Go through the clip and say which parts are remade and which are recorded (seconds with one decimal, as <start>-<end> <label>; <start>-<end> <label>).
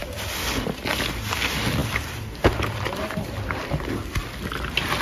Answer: 0.0-1.1 remade; 1.1-1.8 recorded; 1.8-3.8 remade; 3.8-5.0 recorded